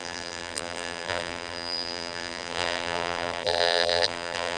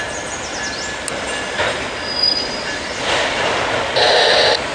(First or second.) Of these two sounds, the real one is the second